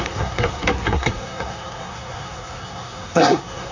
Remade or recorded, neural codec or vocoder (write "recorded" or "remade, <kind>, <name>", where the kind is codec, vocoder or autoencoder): remade, codec, SNAC